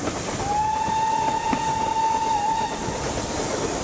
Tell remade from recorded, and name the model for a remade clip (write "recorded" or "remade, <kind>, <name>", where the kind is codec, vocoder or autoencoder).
recorded